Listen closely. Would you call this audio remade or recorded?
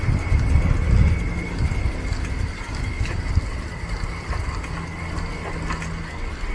recorded